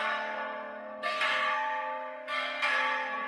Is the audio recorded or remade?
remade